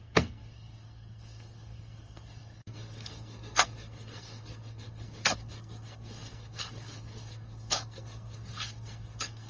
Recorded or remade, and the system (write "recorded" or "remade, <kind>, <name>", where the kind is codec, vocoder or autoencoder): remade, codec, SNAC